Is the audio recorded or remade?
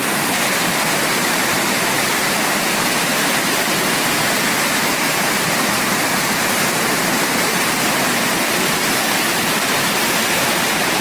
remade